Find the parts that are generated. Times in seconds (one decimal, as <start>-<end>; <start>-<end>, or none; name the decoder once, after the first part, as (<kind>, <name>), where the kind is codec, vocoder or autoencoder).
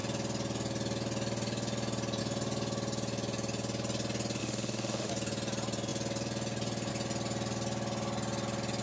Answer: 4.4-5.1 (autoencoder, DAC-VAE)